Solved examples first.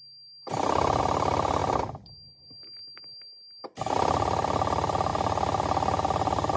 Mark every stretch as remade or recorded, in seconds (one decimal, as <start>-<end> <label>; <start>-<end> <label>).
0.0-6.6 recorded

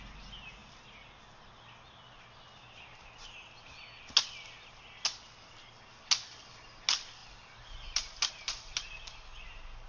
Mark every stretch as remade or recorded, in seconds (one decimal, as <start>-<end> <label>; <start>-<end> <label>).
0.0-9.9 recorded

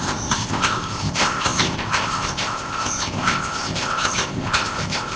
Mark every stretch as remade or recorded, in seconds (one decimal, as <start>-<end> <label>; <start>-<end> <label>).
0.0-5.2 remade

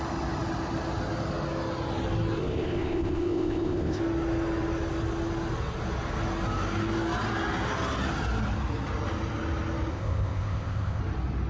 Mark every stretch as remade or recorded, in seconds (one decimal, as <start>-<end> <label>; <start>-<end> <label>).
0.0-2.4 recorded; 2.4-4.0 remade; 4.0-9.9 recorded; 9.9-11.0 remade; 11.0-11.5 recorded

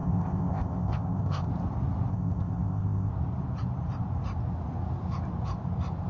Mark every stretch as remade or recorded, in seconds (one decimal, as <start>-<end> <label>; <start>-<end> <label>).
0.0-1.5 remade; 1.5-2.1 recorded; 2.1-3.1 remade; 3.1-6.1 recorded

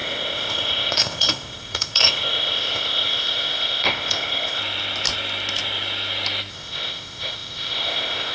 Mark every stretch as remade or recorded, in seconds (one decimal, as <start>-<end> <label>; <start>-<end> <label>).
0.0-4.6 remade; 4.6-6.5 recorded; 6.5-8.3 remade

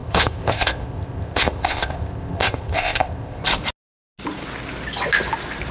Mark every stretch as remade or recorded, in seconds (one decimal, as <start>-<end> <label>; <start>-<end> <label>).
0.0-3.4 remade; 3.4-5.7 recorded

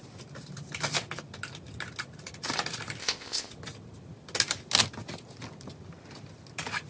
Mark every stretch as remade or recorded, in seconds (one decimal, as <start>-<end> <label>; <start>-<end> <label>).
0.0-3.0 recorded; 3.0-3.5 remade; 3.5-6.9 recorded